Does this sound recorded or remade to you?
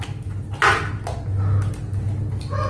recorded